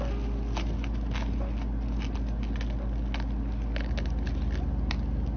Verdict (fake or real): real